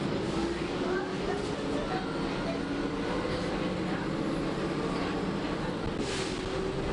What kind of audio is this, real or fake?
real